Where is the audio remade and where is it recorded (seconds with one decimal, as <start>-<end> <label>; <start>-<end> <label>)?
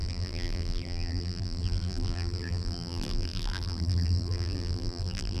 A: 0.0-5.4 remade